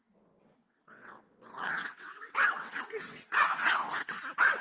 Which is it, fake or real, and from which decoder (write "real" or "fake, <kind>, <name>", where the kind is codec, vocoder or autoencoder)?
fake, vocoder, WaveNeXt